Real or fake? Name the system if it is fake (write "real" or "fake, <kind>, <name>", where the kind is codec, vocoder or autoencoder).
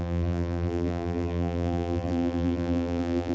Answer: fake, vocoder, BigVGAN v2